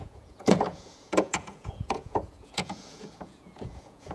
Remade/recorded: remade